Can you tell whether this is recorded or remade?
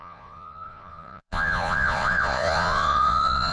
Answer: remade